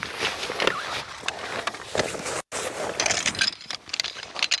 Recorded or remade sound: recorded